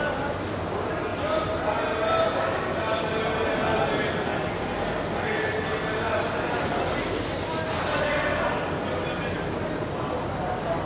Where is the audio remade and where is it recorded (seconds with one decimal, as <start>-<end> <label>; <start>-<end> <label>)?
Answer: 0.0-10.9 recorded